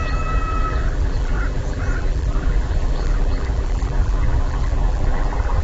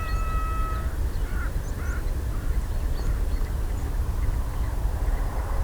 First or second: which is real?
second